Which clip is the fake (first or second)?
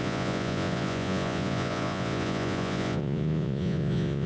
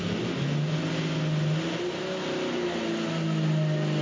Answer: first